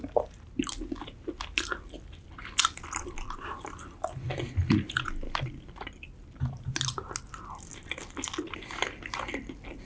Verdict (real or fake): real